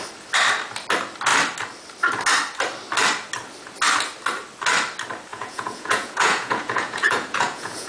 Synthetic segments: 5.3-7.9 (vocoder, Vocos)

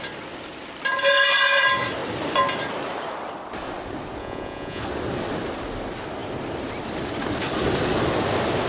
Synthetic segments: 4.2-4.8 (vocoder, Vocos)

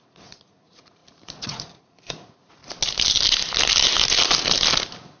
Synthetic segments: 0.0-2.6 (vocoder, Vocos)